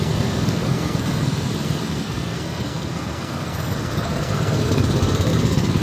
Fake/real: fake